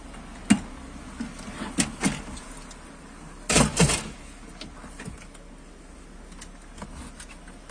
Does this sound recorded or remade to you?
recorded